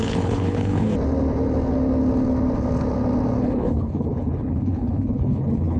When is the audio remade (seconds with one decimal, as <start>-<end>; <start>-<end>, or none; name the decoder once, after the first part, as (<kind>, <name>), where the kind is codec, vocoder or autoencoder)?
0.0-0.9 (codec, HILCodec); 3.4-5.8